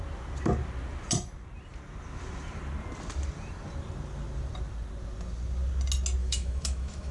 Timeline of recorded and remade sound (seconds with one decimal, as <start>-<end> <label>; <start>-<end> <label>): 0.0-6.2 recorded; 6.2-7.1 remade